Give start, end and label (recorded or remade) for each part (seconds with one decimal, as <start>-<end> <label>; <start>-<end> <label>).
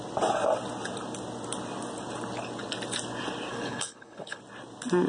0.0-3.5 recorded; 3.5-4.4 remade; 4.4-5.1 recorded